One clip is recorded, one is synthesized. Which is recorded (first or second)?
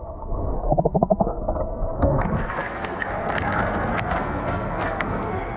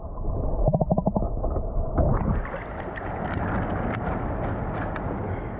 second